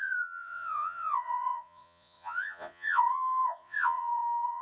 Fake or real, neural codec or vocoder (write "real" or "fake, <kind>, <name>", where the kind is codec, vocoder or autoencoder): fake, vocoder, Vocos